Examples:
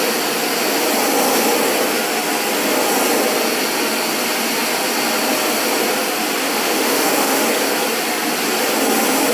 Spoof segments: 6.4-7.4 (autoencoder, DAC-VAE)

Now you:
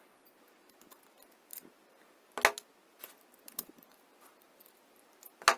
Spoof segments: none

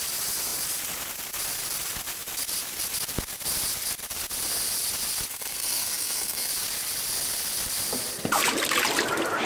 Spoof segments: 5.3-6.5 (codec, SNAC)